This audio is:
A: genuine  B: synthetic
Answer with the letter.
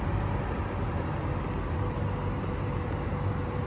A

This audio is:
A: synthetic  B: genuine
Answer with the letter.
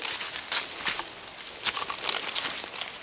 B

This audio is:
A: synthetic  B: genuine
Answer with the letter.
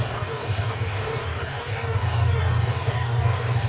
A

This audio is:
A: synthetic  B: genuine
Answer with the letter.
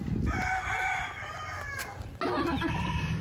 B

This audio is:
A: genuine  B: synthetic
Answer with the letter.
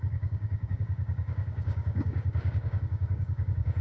B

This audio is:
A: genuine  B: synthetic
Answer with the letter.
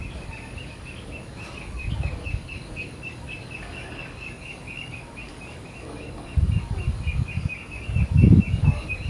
B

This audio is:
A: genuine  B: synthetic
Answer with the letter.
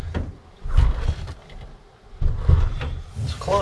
A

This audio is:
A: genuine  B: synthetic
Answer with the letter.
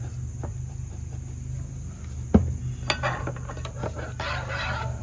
A